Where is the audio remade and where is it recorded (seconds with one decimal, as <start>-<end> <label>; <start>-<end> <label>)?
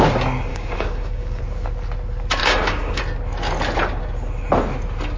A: 0.0-0.5 recorded; 0.5-1.4 remade; 1.4-2.4 recorded; 2.4-3.0 remade; 3.0-5.2 recorded